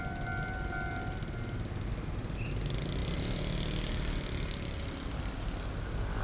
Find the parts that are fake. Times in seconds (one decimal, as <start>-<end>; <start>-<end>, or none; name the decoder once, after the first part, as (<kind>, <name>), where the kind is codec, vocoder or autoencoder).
none